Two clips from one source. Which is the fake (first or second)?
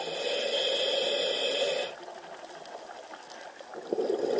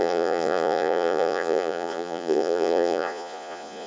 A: second